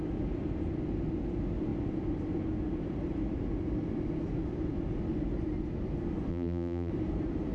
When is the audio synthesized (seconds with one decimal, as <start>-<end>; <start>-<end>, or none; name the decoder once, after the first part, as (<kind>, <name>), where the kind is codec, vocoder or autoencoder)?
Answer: 6.3-6.9 (vocoder, BigVGAN v2)